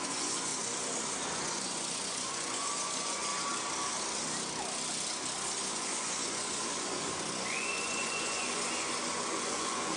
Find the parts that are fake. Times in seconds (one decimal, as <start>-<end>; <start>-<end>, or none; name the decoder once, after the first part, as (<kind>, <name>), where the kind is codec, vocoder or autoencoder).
0.0-0.5 (vocoder, Vocos); 1.3-3.3; 5.7-10.0

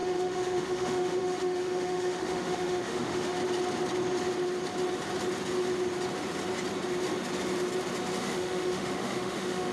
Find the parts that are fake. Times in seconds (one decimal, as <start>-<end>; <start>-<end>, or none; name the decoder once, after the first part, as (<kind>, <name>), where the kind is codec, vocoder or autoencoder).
0.0-3.4 (autoencoder, DAC-VAE); 8.2-9.7

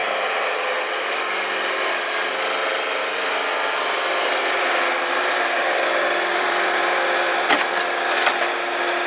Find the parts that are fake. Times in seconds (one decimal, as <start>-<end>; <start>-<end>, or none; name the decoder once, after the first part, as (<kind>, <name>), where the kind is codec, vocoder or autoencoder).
0.0-0.9 (vocoder, BigVGAN v2); 2.6-3.3; 4.1-7.8

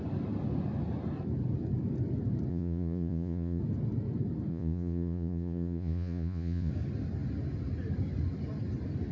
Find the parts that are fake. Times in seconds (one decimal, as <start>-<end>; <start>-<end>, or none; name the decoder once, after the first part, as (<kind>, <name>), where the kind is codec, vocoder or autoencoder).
2.5-3.6 (vocoder, Vocos); 4.5-6.7

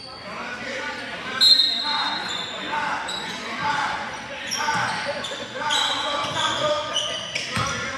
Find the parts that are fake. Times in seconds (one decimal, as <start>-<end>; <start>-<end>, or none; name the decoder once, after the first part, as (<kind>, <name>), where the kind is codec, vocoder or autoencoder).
2.2-7.0 (vocoder, Vocos)